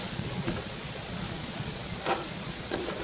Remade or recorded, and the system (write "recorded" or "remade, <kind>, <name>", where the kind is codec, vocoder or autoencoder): remade, vocoder, Vocos